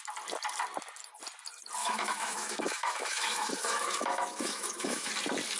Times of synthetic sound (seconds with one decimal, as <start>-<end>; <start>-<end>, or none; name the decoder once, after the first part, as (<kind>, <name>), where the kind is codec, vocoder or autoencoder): 1.8-5.1 (autoencoder, DAC-VAE)